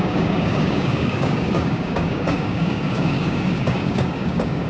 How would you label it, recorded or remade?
remade